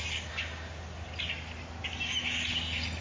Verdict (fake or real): real